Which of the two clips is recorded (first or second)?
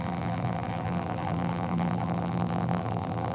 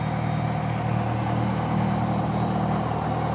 second